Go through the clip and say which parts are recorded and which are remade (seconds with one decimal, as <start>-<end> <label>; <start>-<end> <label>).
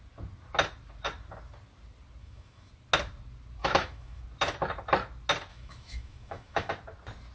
0.0-2.2 recorded; 2.2-2.7 remade; 2.7-3.6 recorded; 3.6-4.2 remade; 4.2-5.5 recorded; 5.5-6.7 remade; 6.7-7.3 recorded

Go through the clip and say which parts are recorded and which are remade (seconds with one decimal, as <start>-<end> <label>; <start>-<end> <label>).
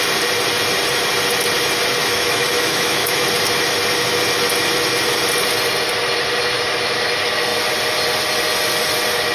0.0-2.0 recorded; 2.0-3.2 remade; 3.2-9.3 recorded